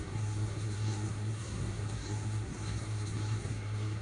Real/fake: fake